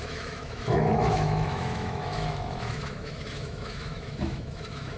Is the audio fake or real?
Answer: fake